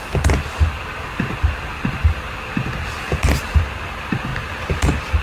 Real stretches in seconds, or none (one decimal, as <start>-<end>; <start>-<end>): 0.0-5.2